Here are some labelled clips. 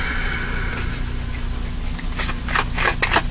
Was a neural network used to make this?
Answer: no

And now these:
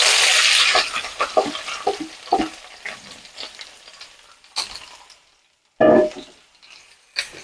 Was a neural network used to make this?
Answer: no